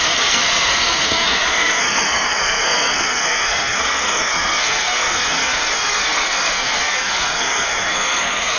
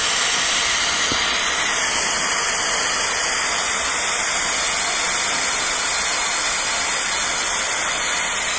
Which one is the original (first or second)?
second